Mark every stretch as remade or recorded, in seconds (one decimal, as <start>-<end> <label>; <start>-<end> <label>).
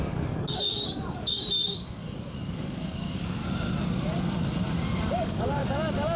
0.0-3.4 remade; 3.4-5.1 recorded; 5.1-5.6 remade; 5.6-6.2 recorded